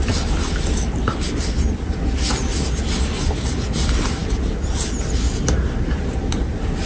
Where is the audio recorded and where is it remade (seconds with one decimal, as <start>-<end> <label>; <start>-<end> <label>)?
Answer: 0.0-6.9 recorded